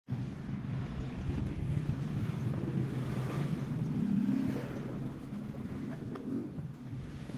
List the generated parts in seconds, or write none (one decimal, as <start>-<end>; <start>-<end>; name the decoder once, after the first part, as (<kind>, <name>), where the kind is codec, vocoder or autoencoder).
0.0-0.4 (codec, DAC); 1.4-2.4; 5.8-7.4

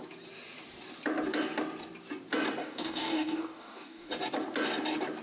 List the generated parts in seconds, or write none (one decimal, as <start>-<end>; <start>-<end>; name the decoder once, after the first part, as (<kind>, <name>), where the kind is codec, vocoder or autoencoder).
2.6-4.1 (codec, DAC)

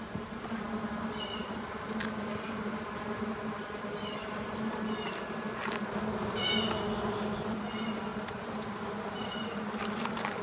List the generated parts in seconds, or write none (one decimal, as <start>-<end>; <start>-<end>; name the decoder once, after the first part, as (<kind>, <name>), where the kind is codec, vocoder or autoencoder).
none

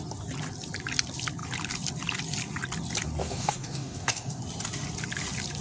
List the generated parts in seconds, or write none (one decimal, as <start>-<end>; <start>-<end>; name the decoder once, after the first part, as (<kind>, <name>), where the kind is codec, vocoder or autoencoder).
3.2-4.4 (codec, DAC)

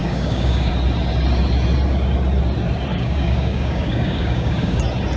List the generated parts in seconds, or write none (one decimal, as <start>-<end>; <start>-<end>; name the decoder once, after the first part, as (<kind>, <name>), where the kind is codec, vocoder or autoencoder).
0.0-0.7 (codec, DAC); 2.9-4.8

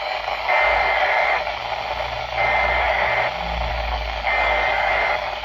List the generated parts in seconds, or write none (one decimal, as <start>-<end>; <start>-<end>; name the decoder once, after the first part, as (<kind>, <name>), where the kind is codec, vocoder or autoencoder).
0.0-1.6 (codec, DAC); 2.2-3.1; 3.7-5.4

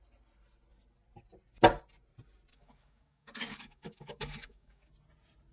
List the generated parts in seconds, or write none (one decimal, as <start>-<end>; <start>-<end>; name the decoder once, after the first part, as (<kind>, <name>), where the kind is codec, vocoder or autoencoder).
2.5-4.9 (codec, DAC)